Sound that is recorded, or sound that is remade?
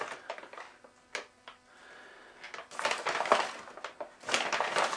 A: recorded